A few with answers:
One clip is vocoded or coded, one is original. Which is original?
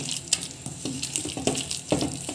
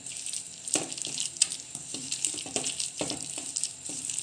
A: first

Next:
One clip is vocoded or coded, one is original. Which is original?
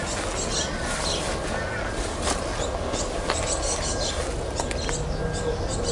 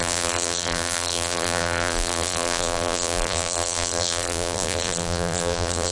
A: first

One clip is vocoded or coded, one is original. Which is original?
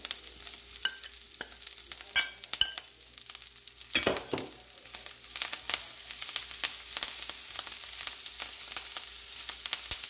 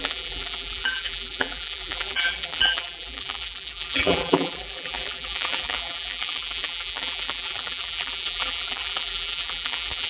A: first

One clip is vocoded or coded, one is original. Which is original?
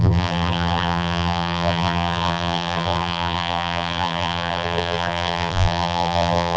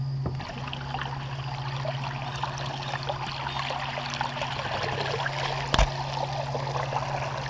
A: second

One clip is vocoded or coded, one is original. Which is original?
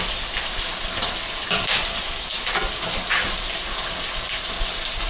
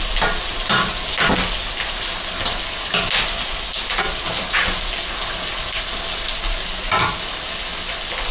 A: second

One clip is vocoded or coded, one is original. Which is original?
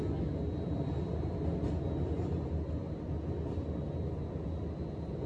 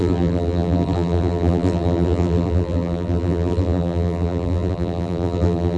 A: first